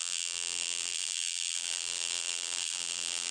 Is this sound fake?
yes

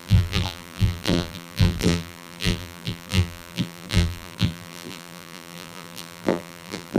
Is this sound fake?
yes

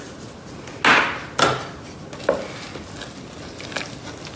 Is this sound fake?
no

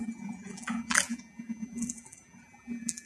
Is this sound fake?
yes